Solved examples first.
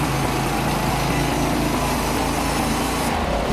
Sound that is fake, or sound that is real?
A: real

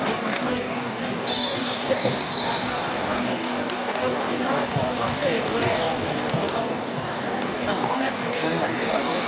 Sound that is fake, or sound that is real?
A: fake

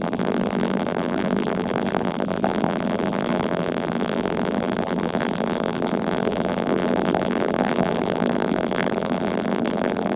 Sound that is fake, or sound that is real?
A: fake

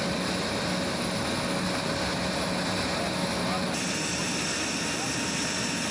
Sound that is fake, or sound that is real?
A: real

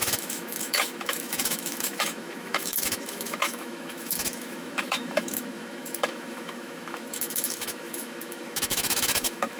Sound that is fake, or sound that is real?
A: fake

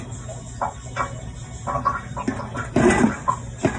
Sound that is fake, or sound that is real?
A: real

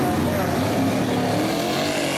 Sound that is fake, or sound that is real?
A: real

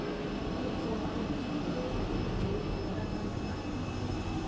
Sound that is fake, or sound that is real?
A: real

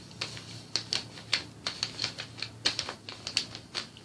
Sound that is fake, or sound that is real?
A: real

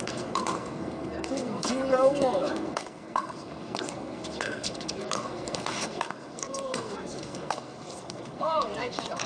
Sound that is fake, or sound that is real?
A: fake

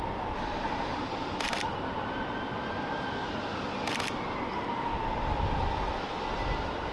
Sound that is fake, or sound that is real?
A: real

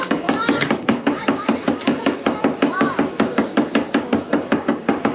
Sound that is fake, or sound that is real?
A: fake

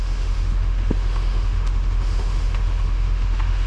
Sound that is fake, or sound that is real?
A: fake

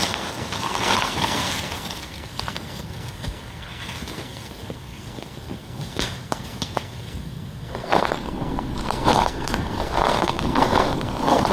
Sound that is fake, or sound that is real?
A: fake